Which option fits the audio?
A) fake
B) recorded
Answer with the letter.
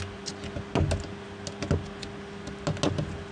B